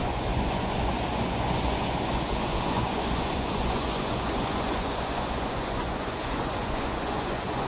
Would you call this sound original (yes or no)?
no